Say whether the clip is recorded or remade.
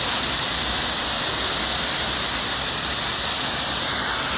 recorded